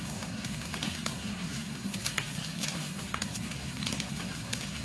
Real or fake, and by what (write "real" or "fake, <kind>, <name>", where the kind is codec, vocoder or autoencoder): fake, codec, SNAC